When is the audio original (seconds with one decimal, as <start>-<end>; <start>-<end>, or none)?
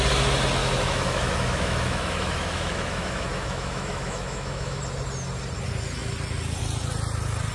0.0-0.6; 4.8-7.5